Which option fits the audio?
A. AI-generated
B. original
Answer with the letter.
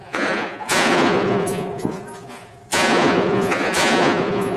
A